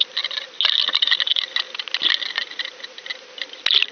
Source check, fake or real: real